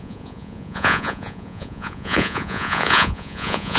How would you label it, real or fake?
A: fake